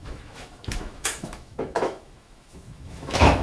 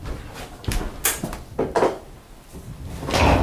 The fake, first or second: first